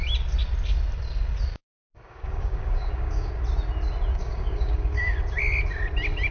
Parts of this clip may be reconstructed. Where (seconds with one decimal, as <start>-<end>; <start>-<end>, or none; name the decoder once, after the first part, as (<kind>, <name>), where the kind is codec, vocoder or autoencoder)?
1.6-3.3 (codec, DAC); 4.1-5.2